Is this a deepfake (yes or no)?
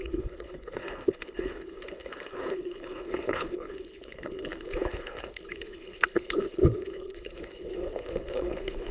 yes